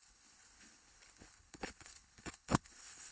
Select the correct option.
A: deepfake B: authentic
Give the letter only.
A